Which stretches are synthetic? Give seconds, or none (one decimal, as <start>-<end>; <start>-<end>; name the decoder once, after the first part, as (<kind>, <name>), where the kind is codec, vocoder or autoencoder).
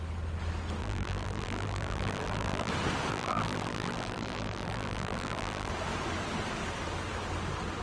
0.8-2.7 (vocoder, BigVGAN v2); 3.1-5.7